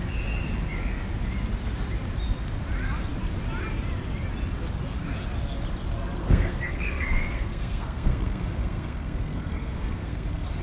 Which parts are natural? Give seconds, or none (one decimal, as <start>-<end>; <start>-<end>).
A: 0.0-6.2